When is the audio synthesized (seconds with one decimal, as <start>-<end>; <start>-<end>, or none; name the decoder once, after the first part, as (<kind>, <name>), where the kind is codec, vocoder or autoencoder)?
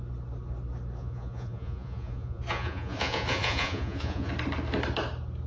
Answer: 1.0-4.3 (vocoder, Vocos)